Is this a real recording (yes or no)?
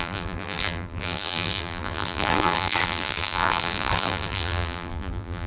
no